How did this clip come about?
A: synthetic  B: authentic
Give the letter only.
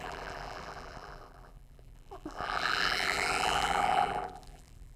A